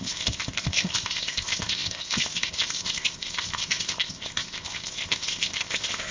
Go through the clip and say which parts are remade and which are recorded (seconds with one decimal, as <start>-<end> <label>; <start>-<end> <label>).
0.0-6.1 remade